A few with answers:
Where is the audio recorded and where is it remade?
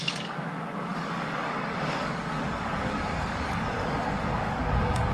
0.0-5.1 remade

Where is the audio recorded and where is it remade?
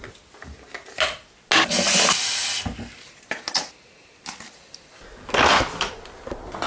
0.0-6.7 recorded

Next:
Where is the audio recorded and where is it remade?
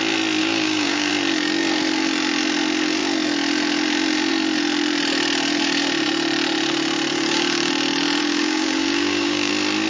0.0-0.4 recorded; 0.4-1.1 remade; 1.1-7.1 recorded; 7.1-7.7 remade; 7.7-8.2 recorded; 8.2-9.5 remade; 9.5-9.9 recorded